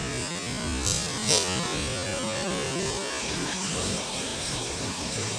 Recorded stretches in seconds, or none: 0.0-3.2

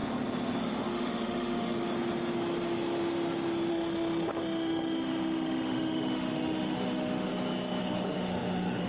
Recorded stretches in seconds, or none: 0.0-0.6; 1.9-3.7; 7.3-7.8

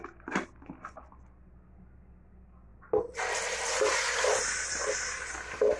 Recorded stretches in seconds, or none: 0.0-5.8

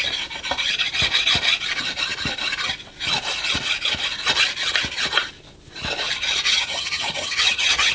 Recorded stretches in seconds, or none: 0.0-6.5

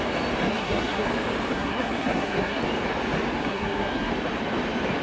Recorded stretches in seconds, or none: 0.0-0.5; 1.1-1.5; 2.6-3.4; 4.1-5.0

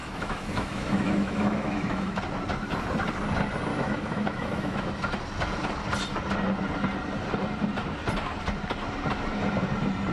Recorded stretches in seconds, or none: 2.2-3.7; 4.9-10.1